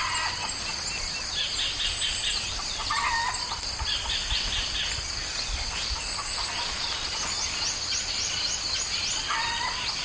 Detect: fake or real real